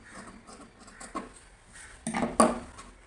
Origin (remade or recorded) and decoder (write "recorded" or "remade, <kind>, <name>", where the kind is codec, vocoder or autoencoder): recorded